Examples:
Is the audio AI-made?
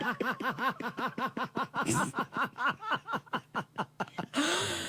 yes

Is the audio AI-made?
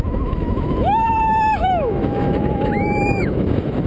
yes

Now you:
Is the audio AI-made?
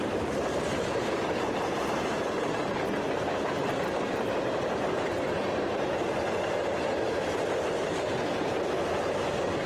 no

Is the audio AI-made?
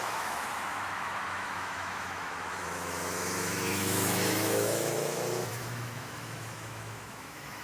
yes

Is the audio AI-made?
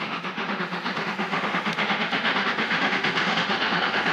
yes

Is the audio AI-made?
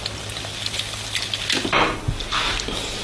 no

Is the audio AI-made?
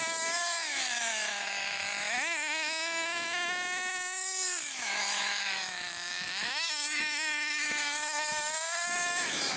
yes